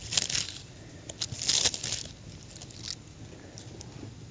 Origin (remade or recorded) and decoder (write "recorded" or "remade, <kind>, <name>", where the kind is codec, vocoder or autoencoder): recorded